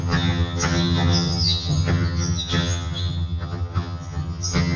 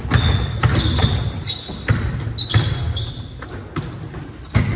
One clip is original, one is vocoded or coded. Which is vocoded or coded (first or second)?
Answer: first